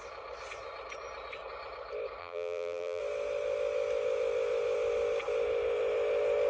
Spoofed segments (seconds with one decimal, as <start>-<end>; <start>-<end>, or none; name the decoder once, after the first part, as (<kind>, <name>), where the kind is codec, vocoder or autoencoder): 2.2-3.0 (vocoder, BigVGAN v2)